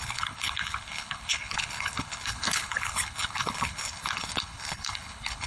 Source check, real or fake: fake